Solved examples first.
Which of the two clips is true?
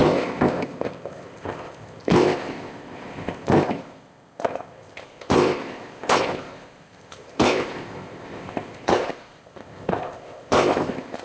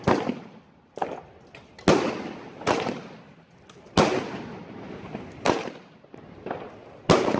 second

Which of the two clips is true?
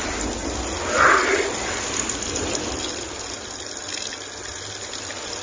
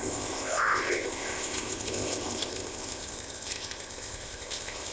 first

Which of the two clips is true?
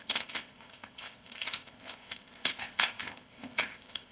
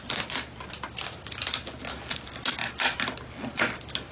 second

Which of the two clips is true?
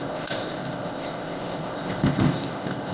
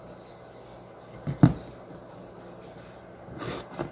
second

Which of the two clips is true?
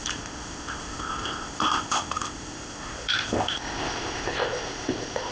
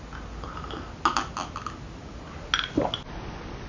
second